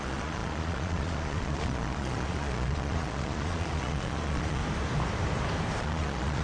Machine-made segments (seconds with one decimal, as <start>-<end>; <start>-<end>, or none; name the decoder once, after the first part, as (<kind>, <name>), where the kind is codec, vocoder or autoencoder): 0.0-4.6 (vocoder, Vocos); 5.8-6.4